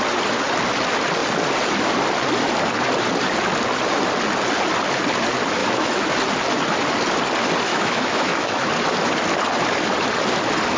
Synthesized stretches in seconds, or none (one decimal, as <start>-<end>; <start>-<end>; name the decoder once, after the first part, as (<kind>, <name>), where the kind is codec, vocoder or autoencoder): 5.6-6.1 (autoencoder, DAC-VAE); 7.7-8.7